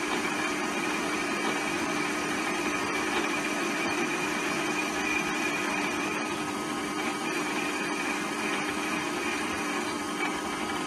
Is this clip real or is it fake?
fake